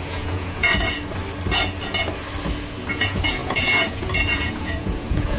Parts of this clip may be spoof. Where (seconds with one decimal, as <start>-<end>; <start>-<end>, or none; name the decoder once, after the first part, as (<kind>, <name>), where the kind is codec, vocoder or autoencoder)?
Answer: 0.0-0.7 (vocoder, Vocos); 2.9-5.4